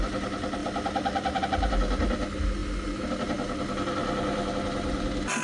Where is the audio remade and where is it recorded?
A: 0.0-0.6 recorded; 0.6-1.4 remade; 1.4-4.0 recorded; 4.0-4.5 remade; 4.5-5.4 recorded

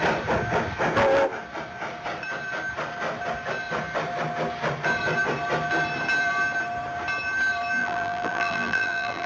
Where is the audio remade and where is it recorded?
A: 0.0-7.8 recorded; 7.8-9.3 remade

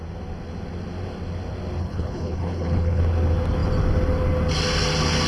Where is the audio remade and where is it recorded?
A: 0.0-1.8 recorded; 1.8-3.0 remade; 3.0-5.3 recorded

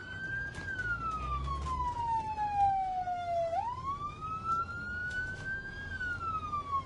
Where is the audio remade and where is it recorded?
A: 0.0-5.0 recorded; 5.0-5.7 remade; 5.7-6.9 recorded